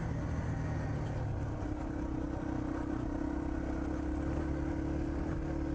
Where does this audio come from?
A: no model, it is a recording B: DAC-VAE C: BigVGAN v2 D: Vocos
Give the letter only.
A